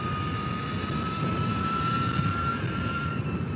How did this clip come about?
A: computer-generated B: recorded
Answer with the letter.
B